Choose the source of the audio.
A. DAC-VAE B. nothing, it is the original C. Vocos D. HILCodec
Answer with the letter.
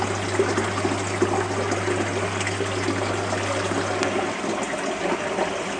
B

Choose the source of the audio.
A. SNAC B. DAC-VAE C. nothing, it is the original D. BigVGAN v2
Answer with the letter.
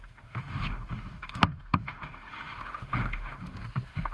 B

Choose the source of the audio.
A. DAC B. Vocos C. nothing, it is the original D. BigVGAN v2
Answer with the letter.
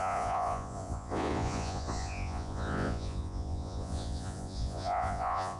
B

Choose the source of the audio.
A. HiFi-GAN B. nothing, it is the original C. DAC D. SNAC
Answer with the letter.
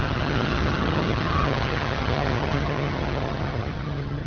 A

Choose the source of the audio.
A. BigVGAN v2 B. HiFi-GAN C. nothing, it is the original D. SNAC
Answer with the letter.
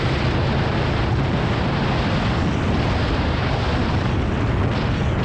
C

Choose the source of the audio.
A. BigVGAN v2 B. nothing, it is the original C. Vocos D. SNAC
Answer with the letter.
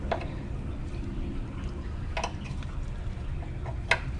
B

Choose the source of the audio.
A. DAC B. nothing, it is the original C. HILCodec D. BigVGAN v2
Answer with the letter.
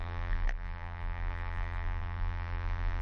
D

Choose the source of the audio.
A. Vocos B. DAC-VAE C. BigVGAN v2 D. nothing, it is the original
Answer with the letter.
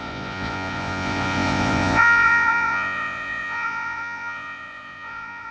A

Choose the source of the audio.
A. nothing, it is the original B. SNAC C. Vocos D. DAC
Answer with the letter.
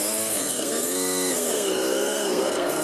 B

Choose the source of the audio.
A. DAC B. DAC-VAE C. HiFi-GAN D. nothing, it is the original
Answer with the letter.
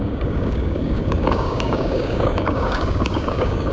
A